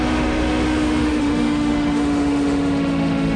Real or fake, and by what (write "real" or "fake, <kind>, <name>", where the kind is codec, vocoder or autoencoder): fake, autoencoder, DAC-VAE